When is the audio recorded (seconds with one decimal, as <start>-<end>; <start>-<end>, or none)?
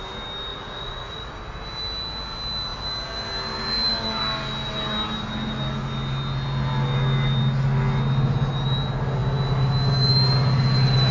0.0-0.5; 1.3-11.1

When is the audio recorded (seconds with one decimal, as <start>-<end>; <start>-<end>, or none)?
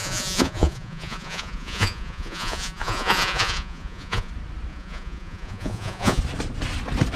4.3-4.7; 6.2-7.2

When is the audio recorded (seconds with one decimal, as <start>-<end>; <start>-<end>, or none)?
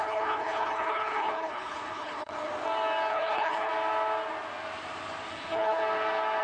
2.5-3.1; 3.7-5.3; 5.8-6.4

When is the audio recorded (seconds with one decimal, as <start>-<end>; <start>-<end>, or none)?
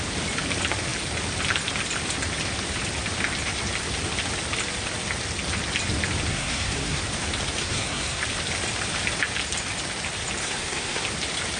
0.0-6.3; 7.0-7.6; 8.2-10.4; 11.0-11.6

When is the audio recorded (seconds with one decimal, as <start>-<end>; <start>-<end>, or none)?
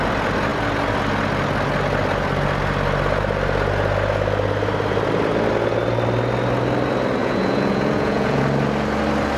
0.0-7.2; 8.4-9.4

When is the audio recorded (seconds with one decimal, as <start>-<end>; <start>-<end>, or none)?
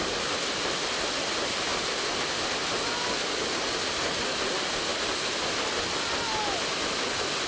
0.0-7.5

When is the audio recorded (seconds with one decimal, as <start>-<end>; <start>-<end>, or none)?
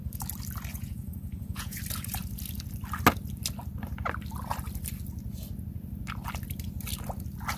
0.0-0.7; 1.8-7.6